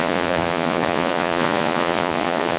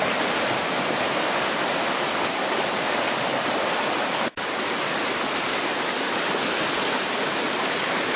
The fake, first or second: first